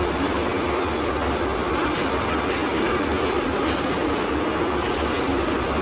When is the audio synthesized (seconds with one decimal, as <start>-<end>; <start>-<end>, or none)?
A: none